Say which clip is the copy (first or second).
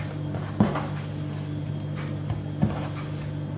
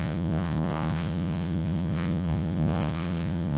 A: second